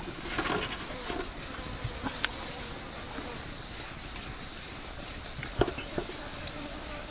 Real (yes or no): yes